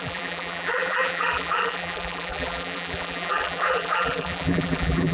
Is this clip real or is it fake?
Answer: fake